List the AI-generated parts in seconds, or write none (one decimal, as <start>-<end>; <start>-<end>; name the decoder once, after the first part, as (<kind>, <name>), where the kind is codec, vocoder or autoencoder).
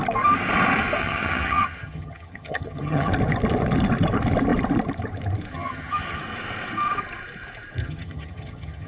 1.0-3.1 (vocoder, HiFi-GAN); 5.5-6.2; 7.8-8.9